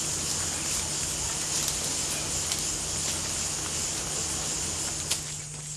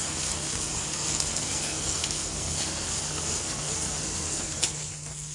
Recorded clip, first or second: first